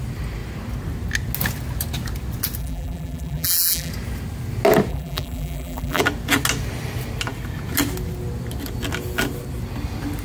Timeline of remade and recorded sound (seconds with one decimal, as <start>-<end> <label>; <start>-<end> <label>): 0.0-2.6 recorded; 2.6-3.9 remade; 3.9-4.9 recorded; 4.9-6.0 remade; 6.0-10.2 recorded